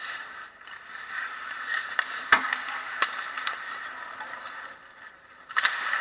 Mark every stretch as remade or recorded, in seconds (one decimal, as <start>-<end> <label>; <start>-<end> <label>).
0.0-6.0 remade